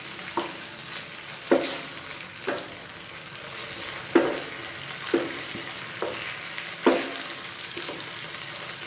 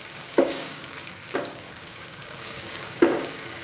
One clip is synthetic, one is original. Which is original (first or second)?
first